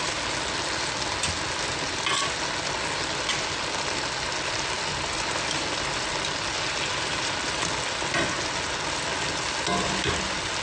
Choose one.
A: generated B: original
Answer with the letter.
B